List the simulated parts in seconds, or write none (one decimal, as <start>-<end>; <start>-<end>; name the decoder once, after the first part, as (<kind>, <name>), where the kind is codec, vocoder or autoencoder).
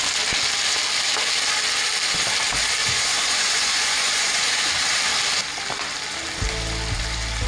2.8-4.7 (vocoder, Vocos)